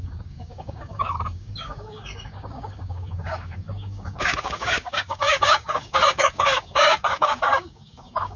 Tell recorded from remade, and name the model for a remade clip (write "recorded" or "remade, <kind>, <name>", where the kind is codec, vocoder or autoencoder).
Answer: remade, codec, DAC